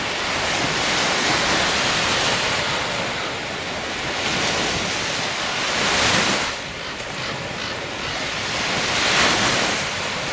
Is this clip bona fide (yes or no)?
yes